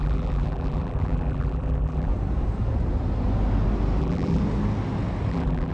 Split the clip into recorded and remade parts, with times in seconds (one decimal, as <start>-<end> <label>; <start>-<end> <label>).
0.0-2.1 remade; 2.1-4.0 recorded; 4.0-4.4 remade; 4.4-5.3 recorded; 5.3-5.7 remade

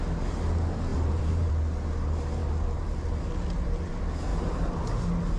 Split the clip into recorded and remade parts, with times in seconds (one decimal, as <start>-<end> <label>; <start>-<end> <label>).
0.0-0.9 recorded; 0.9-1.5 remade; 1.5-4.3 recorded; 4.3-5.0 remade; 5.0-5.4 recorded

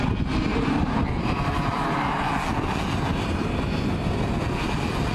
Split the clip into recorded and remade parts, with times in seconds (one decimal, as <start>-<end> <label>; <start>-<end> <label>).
0.0-0.5 recorded; 0.5-2.3 remade; 2.3-3.1 recorded; 3.1-4.2 remade; 4.2-5.1 recorded

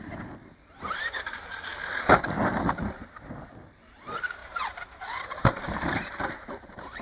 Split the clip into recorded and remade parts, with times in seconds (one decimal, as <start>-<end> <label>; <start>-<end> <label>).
0.0-1.7 remade; 1.7-3.5 recorded; 3.5-7.0 remade

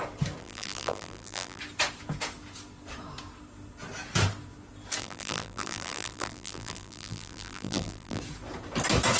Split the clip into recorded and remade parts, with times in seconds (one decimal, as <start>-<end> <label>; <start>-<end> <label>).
0.0-0.4 recorded; 0.4-1.6 remade; 1.6-5.0 recorded; 5.0-8.2 remade; 8.2-9.2 recorded